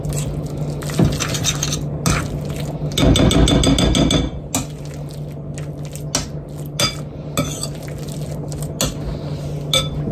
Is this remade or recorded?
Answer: recorded